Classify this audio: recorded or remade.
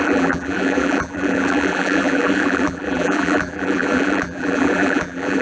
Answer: remade